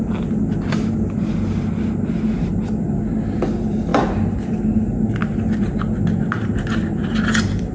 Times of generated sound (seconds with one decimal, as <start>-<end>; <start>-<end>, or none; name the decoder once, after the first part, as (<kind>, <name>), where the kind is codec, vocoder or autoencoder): none